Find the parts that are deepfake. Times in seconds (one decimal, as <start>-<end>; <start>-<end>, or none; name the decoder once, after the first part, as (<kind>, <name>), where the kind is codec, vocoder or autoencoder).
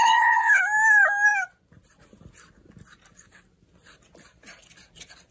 0.0-0.6 (codec, HILCodec)